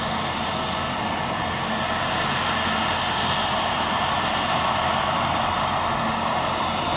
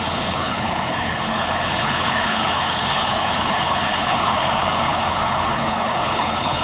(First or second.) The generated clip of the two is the second